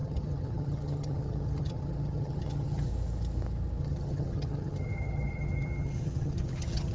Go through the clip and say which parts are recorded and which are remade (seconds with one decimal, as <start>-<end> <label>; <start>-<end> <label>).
0.0-2.9 remade; 2.9-3.8 recorded; 3.8-6.9 remade